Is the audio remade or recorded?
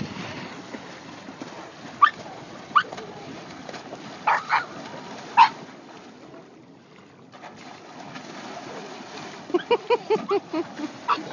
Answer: recorded